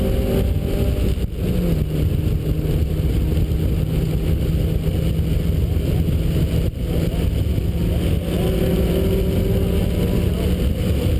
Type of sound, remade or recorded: recorded